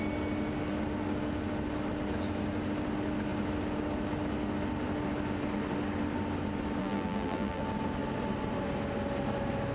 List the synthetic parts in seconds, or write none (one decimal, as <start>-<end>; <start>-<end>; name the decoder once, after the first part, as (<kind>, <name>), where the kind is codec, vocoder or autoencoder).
6.8-7.6 (vocoder, BigVGAN v2)